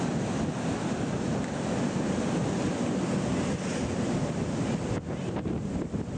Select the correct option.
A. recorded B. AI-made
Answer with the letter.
A